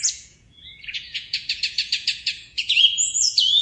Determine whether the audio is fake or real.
fake